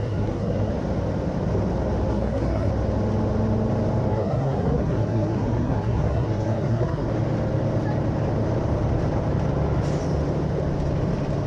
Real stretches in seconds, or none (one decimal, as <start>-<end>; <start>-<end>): 0.7-2.1; 2.7-4.1; 7.1-11.5